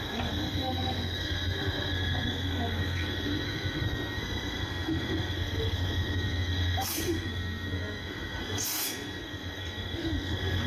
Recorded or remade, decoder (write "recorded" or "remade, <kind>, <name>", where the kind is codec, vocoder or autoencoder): remade, codec, SNAC